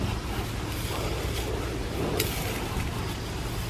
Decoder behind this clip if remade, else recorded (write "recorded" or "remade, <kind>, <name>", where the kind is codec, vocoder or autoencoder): recorded